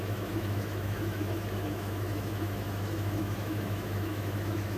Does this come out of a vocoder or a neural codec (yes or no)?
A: yes